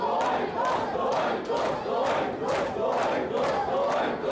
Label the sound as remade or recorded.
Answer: recorded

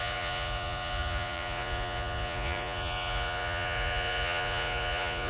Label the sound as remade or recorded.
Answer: remade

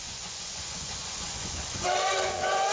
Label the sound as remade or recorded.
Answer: remade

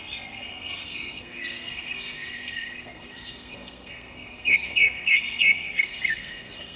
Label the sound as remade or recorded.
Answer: remade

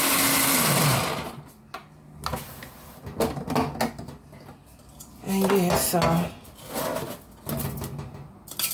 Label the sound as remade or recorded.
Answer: recorded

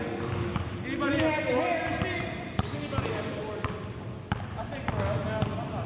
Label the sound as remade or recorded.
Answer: recorded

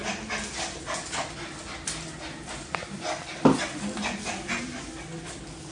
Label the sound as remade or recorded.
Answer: recorded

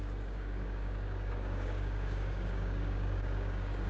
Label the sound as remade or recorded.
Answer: remade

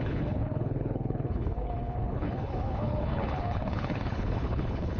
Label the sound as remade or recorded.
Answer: remade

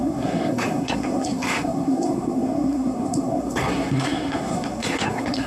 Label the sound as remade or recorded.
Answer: remade